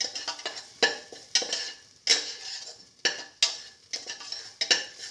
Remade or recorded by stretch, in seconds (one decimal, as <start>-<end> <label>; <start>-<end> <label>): 0.0-5.1 recorded